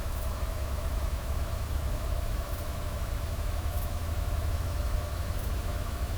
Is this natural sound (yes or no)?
no